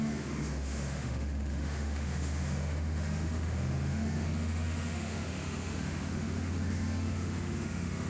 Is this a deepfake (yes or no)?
yes